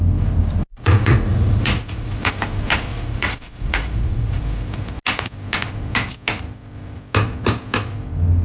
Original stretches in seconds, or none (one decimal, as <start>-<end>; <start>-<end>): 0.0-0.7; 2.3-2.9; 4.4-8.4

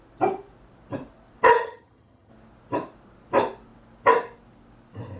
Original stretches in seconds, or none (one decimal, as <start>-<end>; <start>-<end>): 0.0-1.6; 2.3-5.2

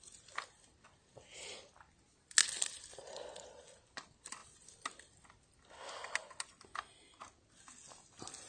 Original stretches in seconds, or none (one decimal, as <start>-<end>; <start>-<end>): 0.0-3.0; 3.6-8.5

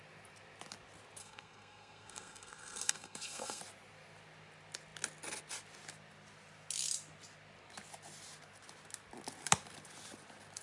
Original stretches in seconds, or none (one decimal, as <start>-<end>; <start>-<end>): 0.0-1.2; 3.6-10.6

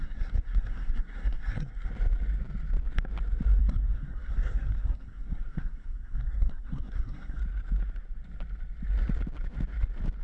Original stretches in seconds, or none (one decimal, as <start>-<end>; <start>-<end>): 1.9-3.6; 7.4-10.2

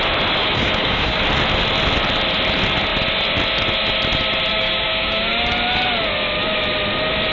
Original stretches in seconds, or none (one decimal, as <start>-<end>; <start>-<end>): 0.0-0.4; 1.2-4.5; 5.5-7.3

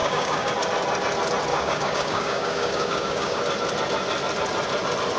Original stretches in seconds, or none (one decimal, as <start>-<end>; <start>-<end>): 0.5-1.5; 3.4-5.2